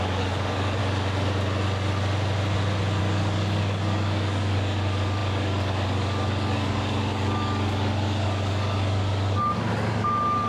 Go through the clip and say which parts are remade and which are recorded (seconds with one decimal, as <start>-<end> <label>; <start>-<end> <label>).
0.0-0.8 remade; 0.8-3.0 recorded; 3.0-10.5 remade